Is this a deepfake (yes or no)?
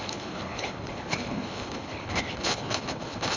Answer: yes